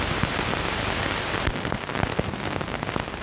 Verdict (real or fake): real